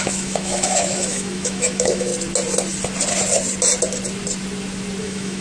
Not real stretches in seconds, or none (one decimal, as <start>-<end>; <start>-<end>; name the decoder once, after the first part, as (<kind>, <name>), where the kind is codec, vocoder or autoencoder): 0.0-2.1 (autoencoder, DAC-VAE); 5.0-5.4